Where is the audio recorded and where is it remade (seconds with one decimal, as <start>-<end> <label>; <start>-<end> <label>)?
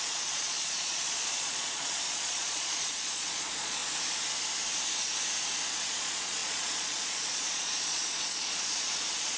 0.0-3.8 remade; 3.8-5.9 recorded; 5.9-9.4 remade